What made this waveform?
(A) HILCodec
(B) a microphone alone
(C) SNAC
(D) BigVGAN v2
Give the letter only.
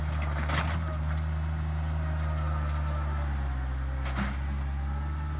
B